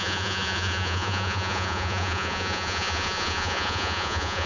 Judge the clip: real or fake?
fake